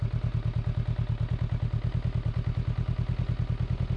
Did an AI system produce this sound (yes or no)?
no